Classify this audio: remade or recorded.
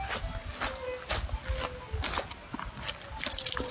recorded